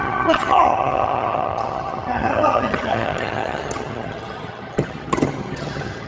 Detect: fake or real fake